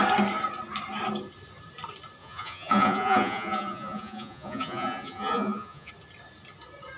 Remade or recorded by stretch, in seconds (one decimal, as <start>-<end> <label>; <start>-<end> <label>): 0.0-2.2 recorded; 2.2-5.9 remade; 5.9-7.0 recorded